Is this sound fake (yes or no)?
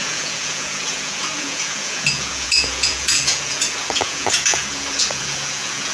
yes